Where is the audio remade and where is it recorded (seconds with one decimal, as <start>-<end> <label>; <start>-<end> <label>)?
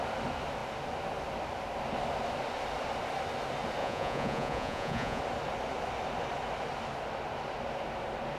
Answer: 0.0-3.8 recorded; 3.8-5.2 remade; 5.2-8.4 recorded